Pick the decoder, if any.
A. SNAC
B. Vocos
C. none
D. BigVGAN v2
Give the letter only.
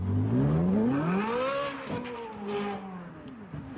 C